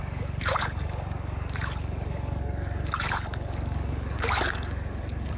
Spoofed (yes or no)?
yes